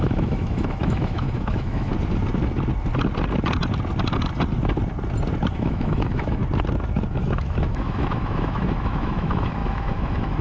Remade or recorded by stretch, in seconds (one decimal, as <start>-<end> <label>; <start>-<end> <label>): 0.0-1.9 remade; 1.9-5.5 recorded; 5.5-6.4 remade; 6.4-7.1 recorded; 7.1-10.4 remade